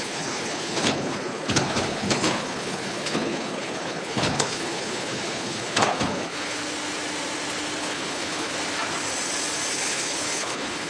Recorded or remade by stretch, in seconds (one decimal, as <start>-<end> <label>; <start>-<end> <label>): 0.0-6.6 remade; 6.6-7.8 recorded; 7.8-8.5 remade; 8.5-9.7 recorded; 9.7-10.9 remade

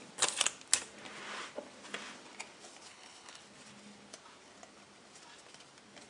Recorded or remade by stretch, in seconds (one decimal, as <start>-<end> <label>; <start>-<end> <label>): 0.0-2.9 recorded; 2.9-3.4 remade; 3.4-6.1 recorded

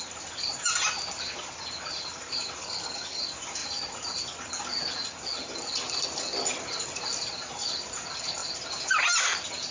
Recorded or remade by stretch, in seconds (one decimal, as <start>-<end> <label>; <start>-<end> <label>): 0.0-2.6 recorded; 2.6-3.2 remade; 3.2-9.7 recorded

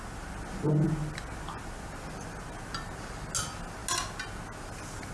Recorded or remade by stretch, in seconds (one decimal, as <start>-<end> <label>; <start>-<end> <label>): 0.0-5.1 recorded

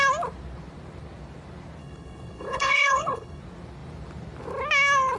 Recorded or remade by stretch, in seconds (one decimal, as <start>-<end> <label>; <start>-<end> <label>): 0.0-1.8 recorded; 1.8-3.4 remade; 3.4-5.2 recorded

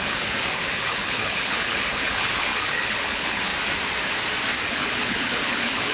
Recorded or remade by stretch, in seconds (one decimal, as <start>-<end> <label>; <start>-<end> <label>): 0.0-3.5 remade; 3.5-4.6 recorded; 4.6-5.9 remade

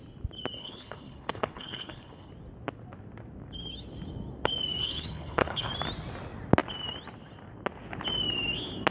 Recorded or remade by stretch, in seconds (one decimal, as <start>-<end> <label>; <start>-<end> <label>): 0.0-0.6 recorded; 0.6-2.3 remade; 2.3-4.8 recorded; 4.8-5.7 remade; 5.7-8.9 recorded